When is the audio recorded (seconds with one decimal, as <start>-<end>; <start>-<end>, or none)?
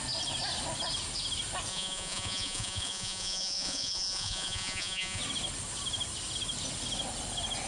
0.0-1.7; 5.2-7.7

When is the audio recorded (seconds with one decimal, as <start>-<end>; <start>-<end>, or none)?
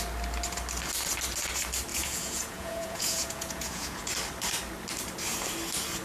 0.0-1.9; 4.1-6.0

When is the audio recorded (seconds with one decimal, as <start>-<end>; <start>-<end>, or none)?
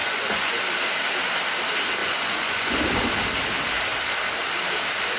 0.6-2.0; 2.7-5.2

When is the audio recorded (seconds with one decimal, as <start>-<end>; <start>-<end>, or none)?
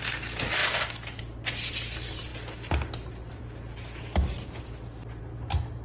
0.0-5.8